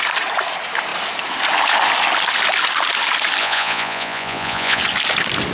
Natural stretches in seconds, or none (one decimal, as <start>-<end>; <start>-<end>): 0.0-3.4; 4.8-5.5